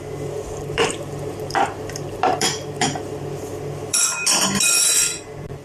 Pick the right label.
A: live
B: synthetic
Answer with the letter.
B